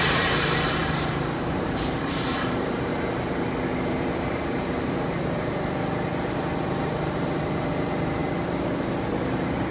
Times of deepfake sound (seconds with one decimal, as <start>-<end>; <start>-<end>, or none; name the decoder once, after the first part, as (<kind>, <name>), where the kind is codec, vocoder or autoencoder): 0.0-2.9 (vocoder, BigVGAN v2); 3.9-8.2; 9.2-9.7